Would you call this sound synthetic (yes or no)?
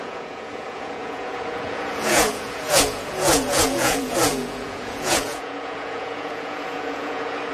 yes